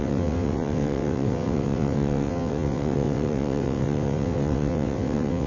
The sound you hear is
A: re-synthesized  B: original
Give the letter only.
A